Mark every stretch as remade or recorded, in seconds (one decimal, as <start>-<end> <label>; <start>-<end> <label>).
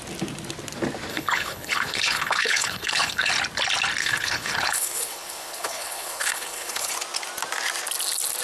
0.0-1.1 recorded; 1.1-3.3 remade; 3.3-4.0 recorded; 4.0-6.9 remade; 6.9-8.4 recorded